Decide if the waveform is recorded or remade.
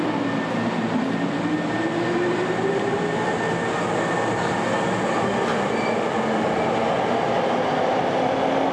recorded